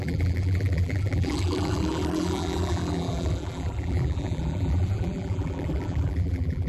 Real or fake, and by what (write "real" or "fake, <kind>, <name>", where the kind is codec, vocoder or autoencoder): fake, vocoder, BigVGAN v2